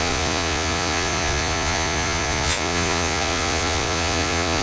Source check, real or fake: fake